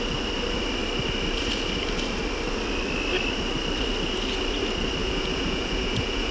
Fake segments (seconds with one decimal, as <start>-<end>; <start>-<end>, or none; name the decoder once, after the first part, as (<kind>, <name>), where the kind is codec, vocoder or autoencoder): 5.0-6.3 (vocoder, Vocos)